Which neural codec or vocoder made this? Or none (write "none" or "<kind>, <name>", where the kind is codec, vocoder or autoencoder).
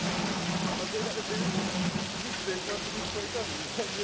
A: none